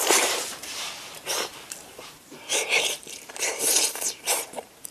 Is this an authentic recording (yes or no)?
no